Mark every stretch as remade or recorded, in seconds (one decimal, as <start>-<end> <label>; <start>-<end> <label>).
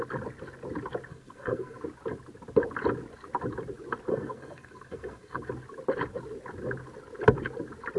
0.0-1.1 recorded; 1.1-1.8 remade; 1.8-4.1 recorded; 4.1-5.5 remade; 5.5-8.0 recorded